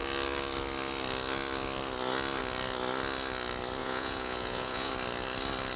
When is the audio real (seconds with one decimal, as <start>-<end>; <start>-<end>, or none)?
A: 0.0-3.8; 4.9-5.8